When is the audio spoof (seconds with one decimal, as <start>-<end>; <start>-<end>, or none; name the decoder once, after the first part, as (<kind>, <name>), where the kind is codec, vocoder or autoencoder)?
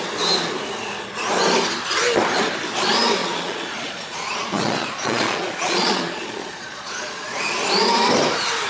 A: 3.2-7.4 (vocoder, Vocos)